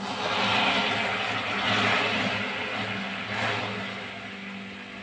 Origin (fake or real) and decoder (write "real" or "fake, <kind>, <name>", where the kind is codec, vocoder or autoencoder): real